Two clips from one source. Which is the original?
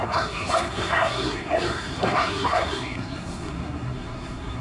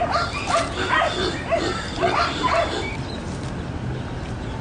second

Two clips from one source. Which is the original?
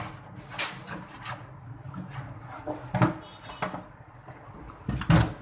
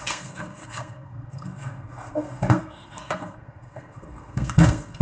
first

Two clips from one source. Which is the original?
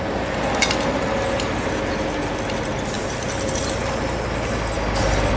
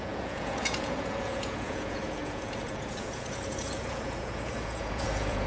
first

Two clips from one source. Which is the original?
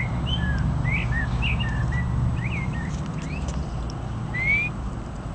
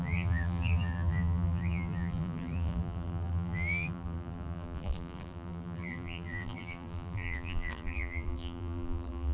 first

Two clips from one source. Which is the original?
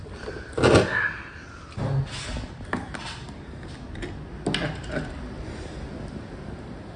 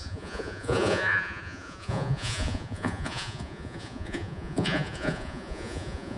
first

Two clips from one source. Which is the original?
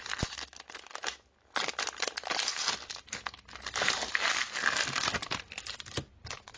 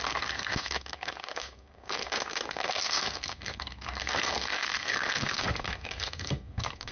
first